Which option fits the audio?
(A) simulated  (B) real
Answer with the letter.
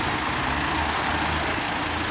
B